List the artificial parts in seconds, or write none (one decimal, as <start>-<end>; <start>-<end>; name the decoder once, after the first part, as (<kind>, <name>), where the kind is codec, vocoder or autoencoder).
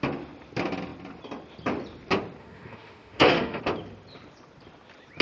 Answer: 2.4-3.6 (autoencoder, DAC-VAE)